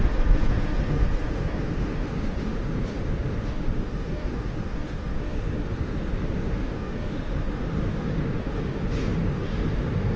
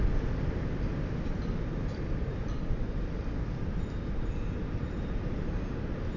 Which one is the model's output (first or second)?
first